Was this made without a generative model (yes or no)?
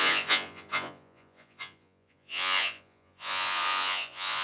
no